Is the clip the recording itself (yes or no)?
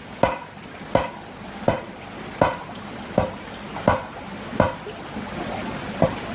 yes